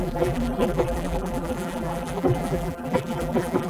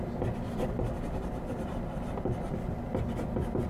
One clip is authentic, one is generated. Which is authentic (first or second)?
second